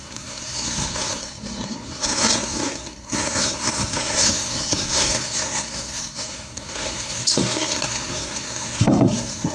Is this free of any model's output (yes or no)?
no